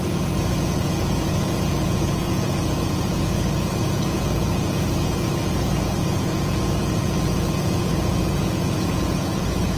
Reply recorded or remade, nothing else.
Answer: remade